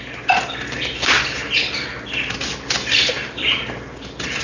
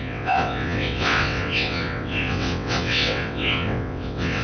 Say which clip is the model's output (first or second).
second